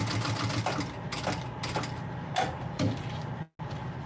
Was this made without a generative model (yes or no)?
yes